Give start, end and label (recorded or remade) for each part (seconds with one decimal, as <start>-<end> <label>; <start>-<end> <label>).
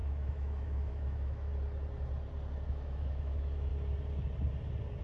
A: 0.0-1.5 remade; 1.5-2.7 recorded; 2.7-3.7 remade; 3.7-5.0 recorded